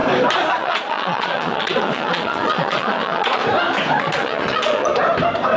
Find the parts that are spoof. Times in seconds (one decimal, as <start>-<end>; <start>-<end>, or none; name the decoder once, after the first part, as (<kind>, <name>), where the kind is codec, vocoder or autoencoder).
0.5-3.4 (vocoder, Vocos); 4.0-4.9